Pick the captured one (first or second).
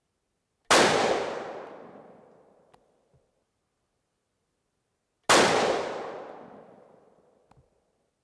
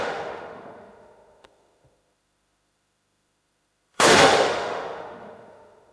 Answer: first